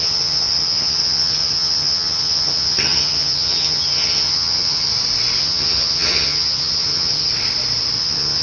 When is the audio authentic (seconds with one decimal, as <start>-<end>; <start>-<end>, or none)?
4.9-5.4; 7.3-8.0